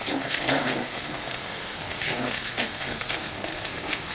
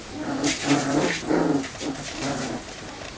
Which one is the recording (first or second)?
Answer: second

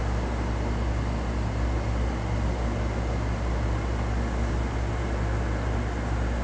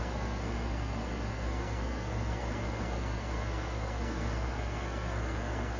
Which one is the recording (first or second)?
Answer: first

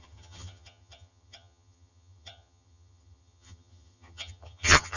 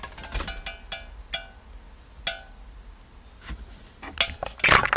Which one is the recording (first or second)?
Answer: second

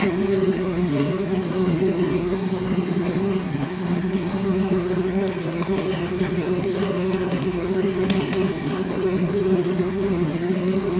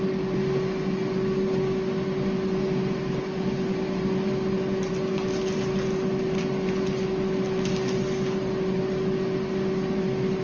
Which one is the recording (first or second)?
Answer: second